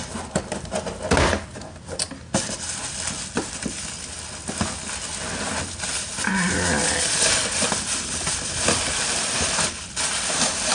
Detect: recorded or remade recorded